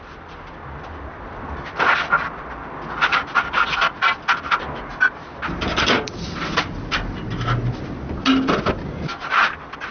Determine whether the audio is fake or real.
real